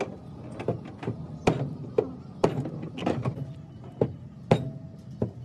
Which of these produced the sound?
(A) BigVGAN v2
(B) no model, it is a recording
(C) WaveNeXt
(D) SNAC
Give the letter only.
B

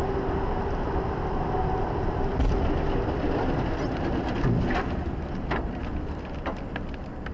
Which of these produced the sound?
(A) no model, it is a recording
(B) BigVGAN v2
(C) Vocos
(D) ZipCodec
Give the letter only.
A